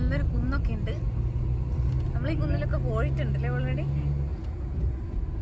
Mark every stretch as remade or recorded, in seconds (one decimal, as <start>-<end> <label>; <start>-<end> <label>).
0.0-4.3 recorded; 4.3-5.0 remade; 5.0-5.4 recorded